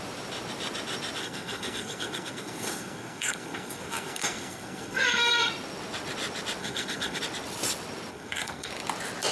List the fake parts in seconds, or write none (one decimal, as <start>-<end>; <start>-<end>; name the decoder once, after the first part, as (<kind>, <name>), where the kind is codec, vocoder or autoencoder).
1.2-5.5 (codec, SNAC); 6.6-7.2; 8.1-8.7